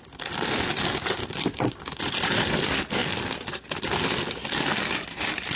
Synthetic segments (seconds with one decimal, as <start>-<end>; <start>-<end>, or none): 1.2-2.0